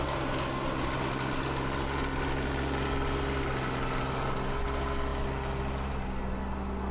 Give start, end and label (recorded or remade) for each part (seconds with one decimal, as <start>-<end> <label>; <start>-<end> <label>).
0.0-6.9 recorded